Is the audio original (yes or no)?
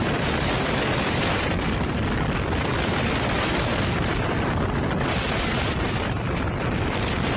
yes